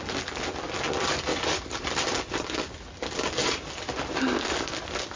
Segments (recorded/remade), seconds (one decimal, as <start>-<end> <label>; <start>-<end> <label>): 0.0-1.3 recorded; 1.3-2.0 remade; 2.0-5.2 recorded